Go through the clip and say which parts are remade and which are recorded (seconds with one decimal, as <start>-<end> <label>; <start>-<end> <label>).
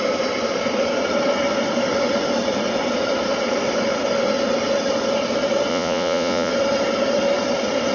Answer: 0.0-5.7 recorded; 5.7-6.5 remade; 6.5-7.9 recorded